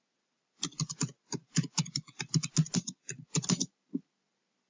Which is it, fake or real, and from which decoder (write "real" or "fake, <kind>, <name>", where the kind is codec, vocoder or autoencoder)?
real